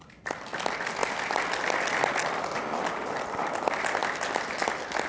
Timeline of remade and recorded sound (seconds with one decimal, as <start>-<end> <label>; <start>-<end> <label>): 0.0-5.1 recorded